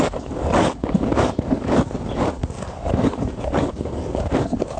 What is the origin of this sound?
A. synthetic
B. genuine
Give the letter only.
A